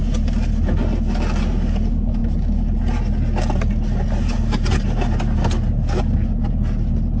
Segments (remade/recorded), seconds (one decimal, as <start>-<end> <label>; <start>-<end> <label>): 0.0-7.2 recorded